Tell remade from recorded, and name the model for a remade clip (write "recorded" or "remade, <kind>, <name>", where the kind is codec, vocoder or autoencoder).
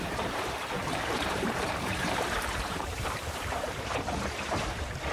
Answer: remade, vocoder, BigVGAN v2